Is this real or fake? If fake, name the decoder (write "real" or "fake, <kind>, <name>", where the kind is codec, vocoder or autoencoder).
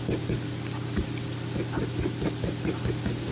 real